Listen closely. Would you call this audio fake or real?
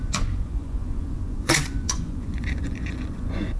fake